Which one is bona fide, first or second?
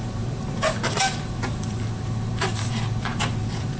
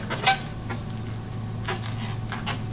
second